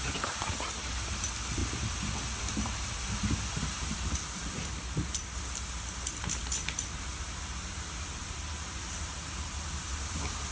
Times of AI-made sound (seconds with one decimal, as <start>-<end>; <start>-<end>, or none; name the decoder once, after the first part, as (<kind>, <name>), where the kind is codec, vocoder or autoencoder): 0.0-8.5 (vocoder, BigVGAN v2); 9.8-10.5